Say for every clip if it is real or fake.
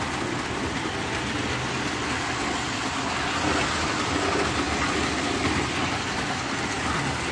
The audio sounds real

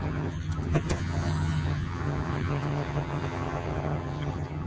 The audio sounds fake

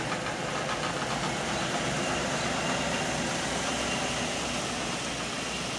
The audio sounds real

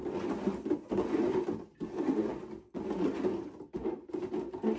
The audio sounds real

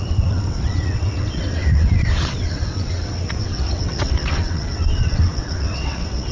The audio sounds fake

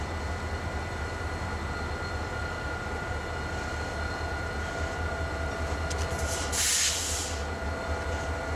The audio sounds real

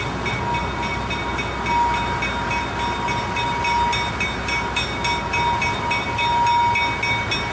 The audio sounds real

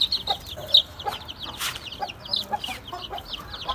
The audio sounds real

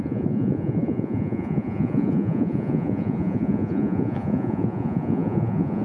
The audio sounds fake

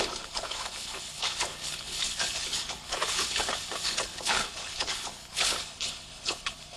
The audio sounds fake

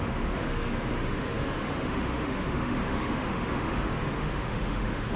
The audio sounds fake